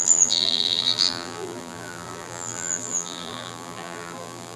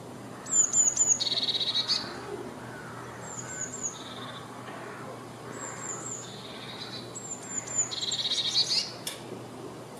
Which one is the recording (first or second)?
second